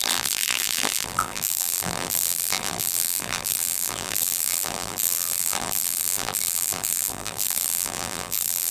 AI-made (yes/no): yes